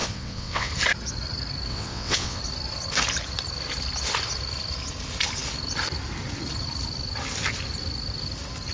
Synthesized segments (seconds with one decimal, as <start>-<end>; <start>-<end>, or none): 0.0-0.7; 1.7-2.4